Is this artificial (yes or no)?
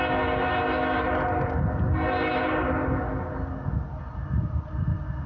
no